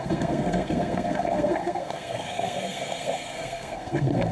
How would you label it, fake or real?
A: fake